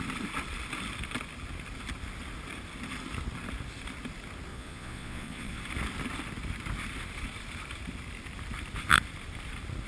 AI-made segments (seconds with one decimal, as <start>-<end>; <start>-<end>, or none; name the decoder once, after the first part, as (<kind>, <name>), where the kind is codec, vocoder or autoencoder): 4.5-5.6 (vocoder, Vocos)